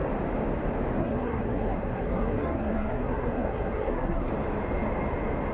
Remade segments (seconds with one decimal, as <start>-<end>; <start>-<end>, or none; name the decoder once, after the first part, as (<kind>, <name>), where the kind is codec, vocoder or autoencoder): 1.0-4.3 (codec, SNAC)

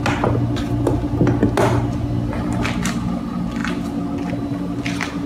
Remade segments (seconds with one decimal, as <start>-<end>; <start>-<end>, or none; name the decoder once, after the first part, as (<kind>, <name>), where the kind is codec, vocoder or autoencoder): none

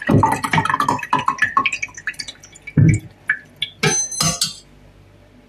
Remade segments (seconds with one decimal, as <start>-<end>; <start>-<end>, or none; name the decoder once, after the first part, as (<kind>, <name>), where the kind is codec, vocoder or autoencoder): none

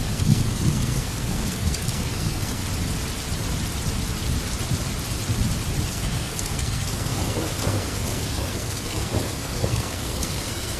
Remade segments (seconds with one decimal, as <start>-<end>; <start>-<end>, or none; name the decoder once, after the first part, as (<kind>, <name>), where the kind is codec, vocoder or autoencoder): 0.0-2.6 (codec, SNAC); 5.9-10.8

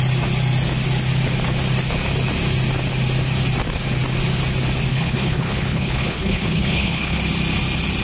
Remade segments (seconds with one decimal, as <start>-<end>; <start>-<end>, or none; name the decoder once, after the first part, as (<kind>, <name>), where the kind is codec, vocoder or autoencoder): 4.9-7.2 (codec, HILCodec)

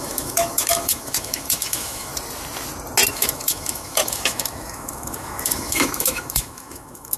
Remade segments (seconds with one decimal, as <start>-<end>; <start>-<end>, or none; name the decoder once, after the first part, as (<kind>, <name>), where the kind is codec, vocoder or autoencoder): 0.0-2.1 (autoencoder, DAC-VAE); 3.1-7.2